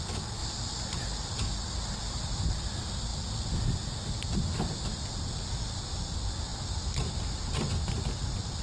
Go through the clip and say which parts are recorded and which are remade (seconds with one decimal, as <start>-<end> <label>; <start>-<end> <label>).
0.0-8.6 recorded